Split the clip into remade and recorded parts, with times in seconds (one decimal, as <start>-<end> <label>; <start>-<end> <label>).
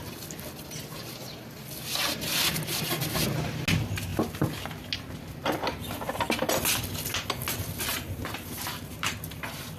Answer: 0.0-7.9 recorded; 7.9-9.1 remade; 9.1-9.8 recorded